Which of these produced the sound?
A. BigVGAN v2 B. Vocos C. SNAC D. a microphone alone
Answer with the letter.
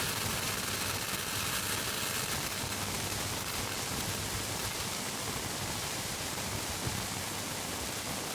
D